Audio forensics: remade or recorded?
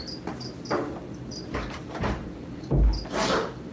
recorded